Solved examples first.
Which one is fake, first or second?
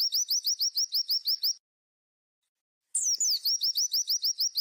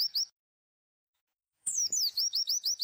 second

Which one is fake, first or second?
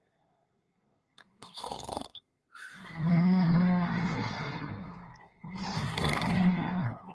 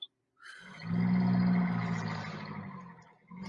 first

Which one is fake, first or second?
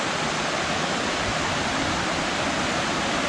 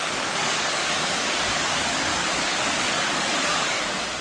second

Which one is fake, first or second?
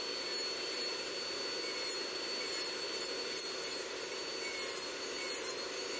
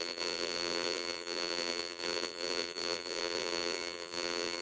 second